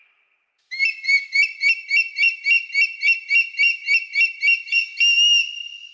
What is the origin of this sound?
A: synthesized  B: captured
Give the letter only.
B